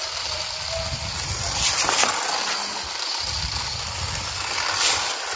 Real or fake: real